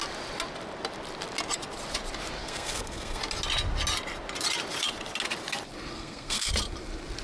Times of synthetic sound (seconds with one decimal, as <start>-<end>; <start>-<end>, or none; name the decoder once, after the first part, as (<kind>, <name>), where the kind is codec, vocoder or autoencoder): 2.4-3.2 (codec, SNAC); 5.9-6.5